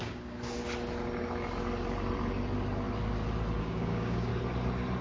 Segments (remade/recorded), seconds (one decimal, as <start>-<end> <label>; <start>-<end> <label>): 0.0-0.6 remade; 0.6-3.6 recorded; 3.6-4.3 remade; 4.3-5.0 recorded